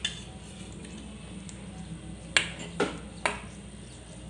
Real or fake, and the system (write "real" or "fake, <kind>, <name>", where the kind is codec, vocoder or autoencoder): real